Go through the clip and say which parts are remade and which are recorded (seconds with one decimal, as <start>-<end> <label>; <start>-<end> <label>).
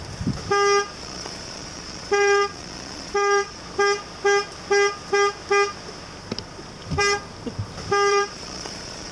0.0-1.0 recorded; 1.0-3.6 remade; 3.6-8.1 recorded; 8.1-9.1 remade